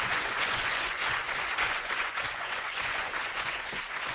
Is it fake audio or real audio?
fake